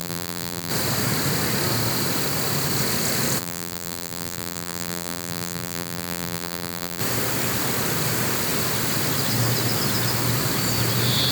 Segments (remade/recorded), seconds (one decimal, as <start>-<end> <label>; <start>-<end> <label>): 0.0-0.7 remade; 0.7-3.4 recorded; 3.4-7.0 remade; 7.0-11.3 recorded